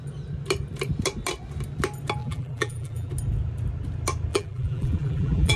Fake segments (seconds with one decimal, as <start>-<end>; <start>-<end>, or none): 2.2-3.1; 4.3-5.6

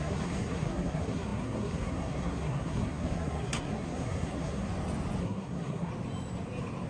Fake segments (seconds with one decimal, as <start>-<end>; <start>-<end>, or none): 0.0-4.7; 5.2-5.9

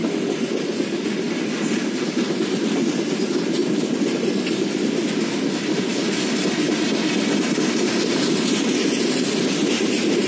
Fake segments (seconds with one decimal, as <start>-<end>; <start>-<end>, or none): 0.0-2.9